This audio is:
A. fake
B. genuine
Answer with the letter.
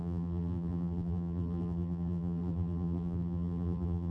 A